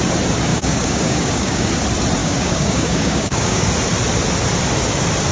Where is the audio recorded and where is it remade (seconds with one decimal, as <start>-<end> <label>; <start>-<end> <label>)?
0.0-0.5 recorded; 0.5-1.7 remade; 1.7-2.2 recorded; 2.2-3.7 remade; 3.7-5.3 recorded